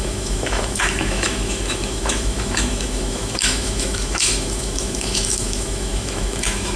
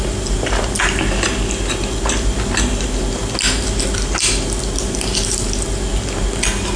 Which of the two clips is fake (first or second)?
first